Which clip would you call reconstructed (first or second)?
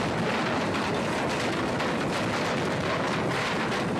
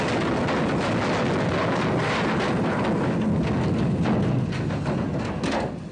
first